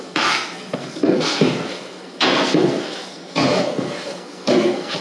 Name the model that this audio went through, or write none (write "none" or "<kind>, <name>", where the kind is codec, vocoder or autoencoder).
codec, SNAC